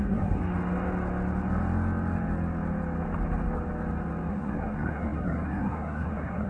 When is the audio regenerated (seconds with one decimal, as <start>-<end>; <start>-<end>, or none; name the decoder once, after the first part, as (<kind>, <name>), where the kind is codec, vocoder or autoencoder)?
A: 0.0-0.4 (codec, SNAC); 4.3-6.5